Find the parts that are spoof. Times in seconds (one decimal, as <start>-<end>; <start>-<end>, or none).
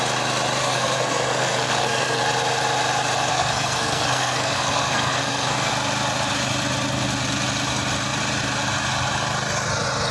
0.6-2.2; 3.3-5.7